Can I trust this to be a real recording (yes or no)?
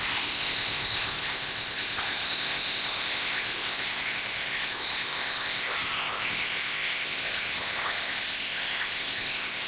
no